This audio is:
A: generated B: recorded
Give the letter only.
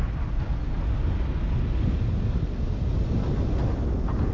B